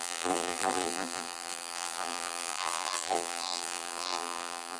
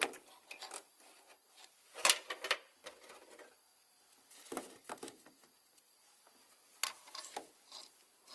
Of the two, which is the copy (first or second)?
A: first